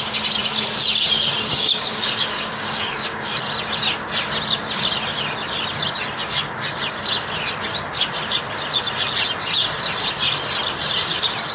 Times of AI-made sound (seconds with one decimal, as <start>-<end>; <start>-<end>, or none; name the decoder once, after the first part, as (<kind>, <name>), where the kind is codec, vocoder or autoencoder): 1.6-3.4 (codec, DAC)